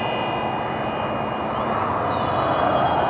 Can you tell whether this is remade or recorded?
recorded